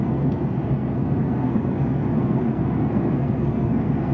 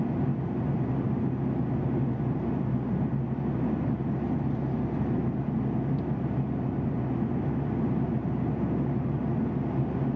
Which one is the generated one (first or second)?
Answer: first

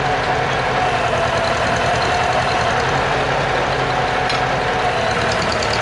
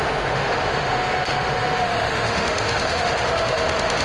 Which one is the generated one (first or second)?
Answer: second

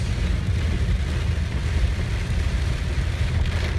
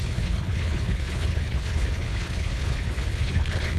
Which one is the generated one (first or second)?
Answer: second